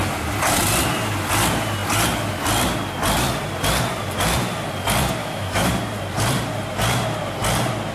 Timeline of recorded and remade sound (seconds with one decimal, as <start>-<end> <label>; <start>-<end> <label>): 0.0-5.2 recorded; 5.2-5.7 remade; 5.7-7.9 recorded